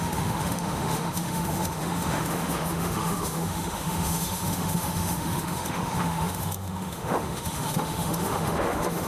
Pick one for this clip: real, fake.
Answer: fake